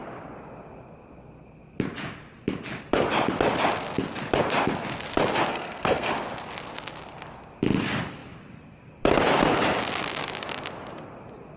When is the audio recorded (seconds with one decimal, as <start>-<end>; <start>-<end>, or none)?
0.0-5.5; 6.1-11.6